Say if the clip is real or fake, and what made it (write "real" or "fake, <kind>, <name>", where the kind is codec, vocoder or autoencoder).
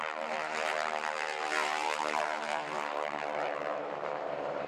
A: fake, vocoder, BigVGAN v2